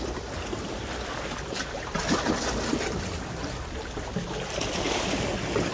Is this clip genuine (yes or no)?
yes